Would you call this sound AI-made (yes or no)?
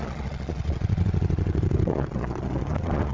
yes